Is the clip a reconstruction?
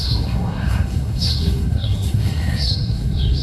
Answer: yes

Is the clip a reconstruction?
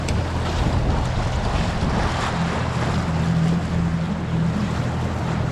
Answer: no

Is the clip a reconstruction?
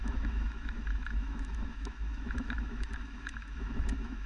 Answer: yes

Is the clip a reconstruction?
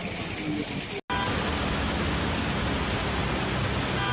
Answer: no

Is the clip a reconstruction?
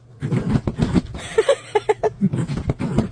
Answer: no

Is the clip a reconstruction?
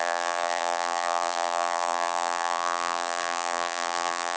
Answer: yes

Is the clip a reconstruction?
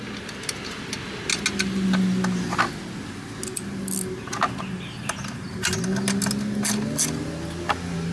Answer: no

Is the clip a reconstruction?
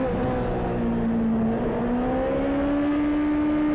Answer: no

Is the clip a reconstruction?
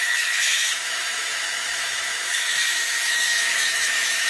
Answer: yes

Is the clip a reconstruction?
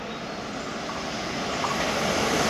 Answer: no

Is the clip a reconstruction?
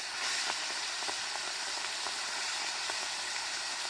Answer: no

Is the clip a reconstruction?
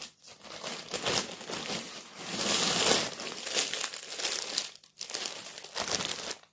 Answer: no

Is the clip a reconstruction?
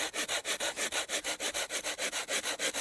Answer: no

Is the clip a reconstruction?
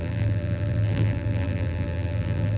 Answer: yes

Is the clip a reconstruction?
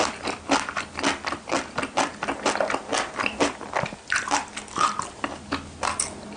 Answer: no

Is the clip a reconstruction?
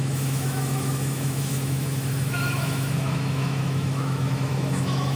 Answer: yes